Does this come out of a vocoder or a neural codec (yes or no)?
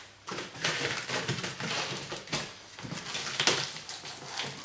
no